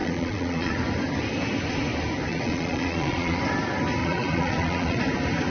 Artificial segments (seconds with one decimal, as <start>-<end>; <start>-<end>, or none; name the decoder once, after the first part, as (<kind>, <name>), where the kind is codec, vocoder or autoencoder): 0.0-0.7 (vocoder, Vocos); 2.3-3.4; 4.0-5.0